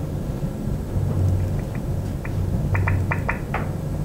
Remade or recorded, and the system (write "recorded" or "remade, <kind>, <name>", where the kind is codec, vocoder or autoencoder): recorded